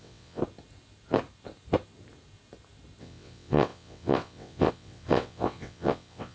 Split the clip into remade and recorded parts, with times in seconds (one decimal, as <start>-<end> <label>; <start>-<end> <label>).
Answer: 0.0-0.4 remade; 0.4-3.0 recorded; 3.0-6.3 remade